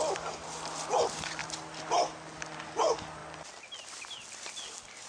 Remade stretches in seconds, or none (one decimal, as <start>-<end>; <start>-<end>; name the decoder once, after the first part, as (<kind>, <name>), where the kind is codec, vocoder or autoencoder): none